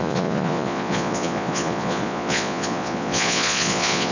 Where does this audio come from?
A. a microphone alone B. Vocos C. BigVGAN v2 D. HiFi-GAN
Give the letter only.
B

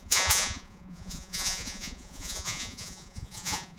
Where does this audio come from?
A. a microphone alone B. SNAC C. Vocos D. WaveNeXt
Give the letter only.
C